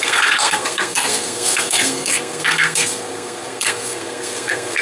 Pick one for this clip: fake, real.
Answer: fake